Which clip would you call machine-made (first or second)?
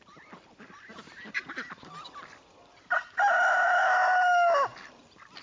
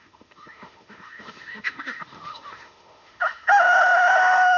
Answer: second